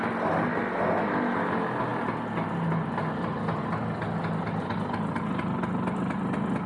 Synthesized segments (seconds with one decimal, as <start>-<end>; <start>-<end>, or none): none